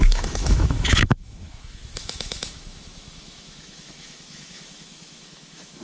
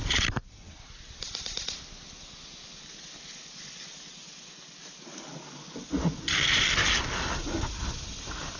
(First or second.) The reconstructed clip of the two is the first